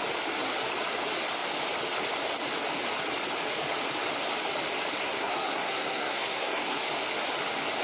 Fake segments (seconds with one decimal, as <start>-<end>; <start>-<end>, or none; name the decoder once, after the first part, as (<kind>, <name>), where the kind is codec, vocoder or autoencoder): 5.0-6.9 (codec, SNAC)